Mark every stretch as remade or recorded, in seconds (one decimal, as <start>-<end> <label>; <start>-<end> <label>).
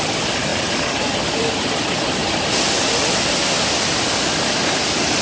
0.0-5.2 recorded